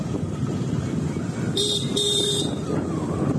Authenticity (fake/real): fake